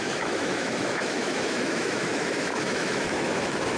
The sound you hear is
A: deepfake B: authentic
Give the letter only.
A